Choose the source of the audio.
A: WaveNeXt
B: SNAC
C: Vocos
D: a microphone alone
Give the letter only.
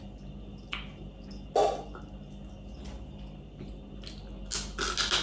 D